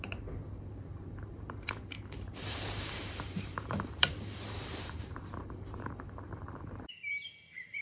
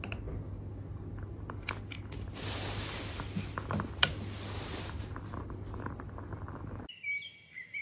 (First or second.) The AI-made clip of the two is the first